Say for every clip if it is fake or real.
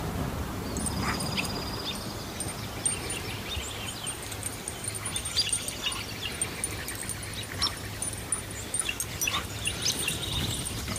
real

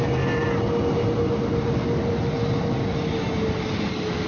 real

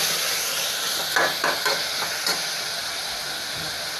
real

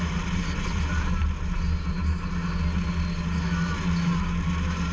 real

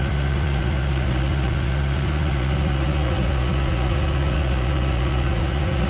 fake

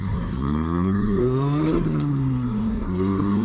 fake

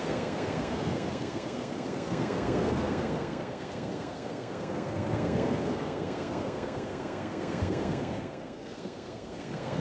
fake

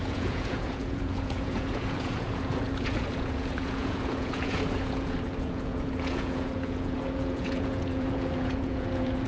fake